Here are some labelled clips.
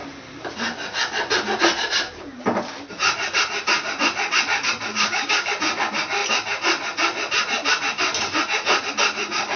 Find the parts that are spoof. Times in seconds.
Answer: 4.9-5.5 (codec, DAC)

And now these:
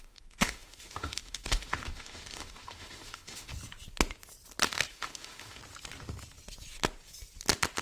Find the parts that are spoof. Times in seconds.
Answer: 0.0-3.5 (autoencoder, DAC-VAE); 4.9-5.6

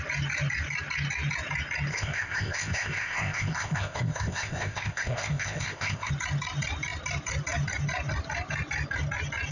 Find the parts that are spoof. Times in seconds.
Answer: 1.9-6.1 (codec, ZipCodec)

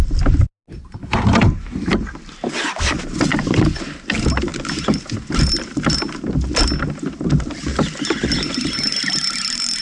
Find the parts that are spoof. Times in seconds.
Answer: none